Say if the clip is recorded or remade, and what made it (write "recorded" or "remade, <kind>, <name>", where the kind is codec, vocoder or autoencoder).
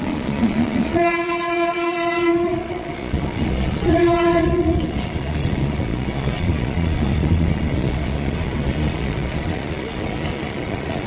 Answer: remade, vocoder, Vocos